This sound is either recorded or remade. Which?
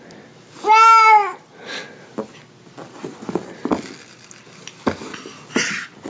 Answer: recorded